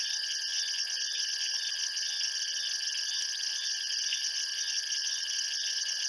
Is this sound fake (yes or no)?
no